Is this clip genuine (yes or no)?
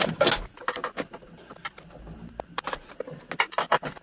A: yes